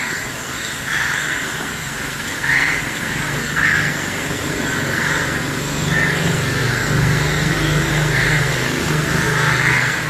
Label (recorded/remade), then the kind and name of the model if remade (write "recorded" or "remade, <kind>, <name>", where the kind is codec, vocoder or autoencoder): remade, codec, SNAC